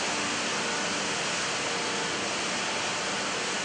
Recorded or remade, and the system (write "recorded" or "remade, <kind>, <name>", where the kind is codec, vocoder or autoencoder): recorded